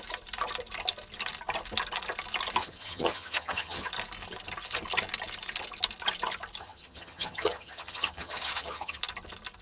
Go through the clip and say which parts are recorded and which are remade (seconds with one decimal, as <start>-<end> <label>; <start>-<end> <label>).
0.0-2.6 recorded; 2.6-3.9 remade; 3.9-6.6 recorded; 6.6-9.0 remade; 9.0-9.6 recorded